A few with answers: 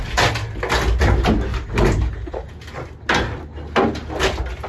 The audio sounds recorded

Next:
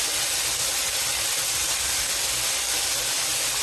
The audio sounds recorded